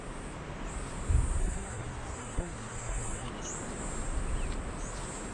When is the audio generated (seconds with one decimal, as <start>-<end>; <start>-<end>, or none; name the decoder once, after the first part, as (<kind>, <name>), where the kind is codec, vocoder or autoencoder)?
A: 1.4-3.3 (codec, SNAC)